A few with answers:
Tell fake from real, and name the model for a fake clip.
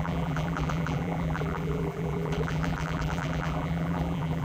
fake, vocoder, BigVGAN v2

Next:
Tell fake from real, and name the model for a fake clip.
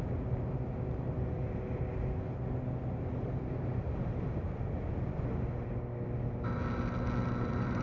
real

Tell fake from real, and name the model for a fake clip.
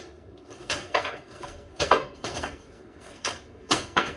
fake, codec, SNAC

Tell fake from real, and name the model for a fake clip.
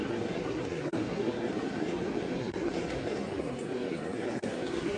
fake, codec, SNAC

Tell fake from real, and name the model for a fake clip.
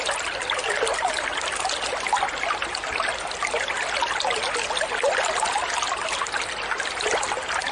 real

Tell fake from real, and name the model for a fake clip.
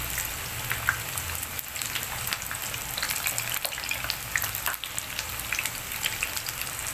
real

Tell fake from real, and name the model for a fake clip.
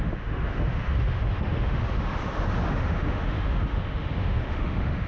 fake, autoencoder, DAC-VAE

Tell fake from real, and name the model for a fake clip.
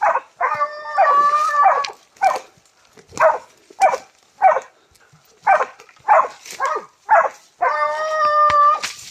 real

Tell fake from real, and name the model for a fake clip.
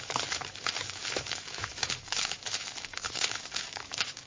fake, autoencoder, DAC-VAE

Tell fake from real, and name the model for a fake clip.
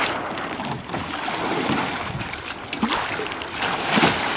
real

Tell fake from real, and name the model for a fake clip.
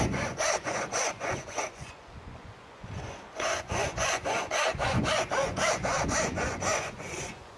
fake, vocoder, Vocos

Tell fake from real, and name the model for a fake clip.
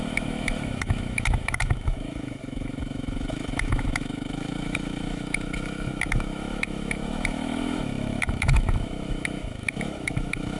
fake, autoencoder, DAC-VAE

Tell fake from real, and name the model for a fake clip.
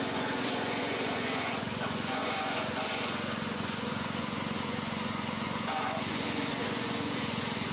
fake, vocoder, Vocos